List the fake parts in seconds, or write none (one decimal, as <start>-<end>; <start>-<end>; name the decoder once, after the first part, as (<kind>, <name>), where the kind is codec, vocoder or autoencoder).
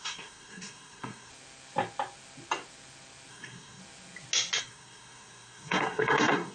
0.0-1.3 (codec, SNAC); 3.3-3.8; 4.6-6.5